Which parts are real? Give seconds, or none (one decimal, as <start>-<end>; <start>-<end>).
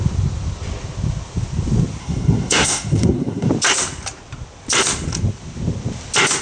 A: 0.0-2.0; 3.5-6.4